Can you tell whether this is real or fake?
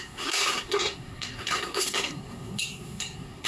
fake